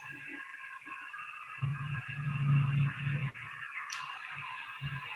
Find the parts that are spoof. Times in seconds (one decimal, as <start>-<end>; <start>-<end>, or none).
1.7-2.4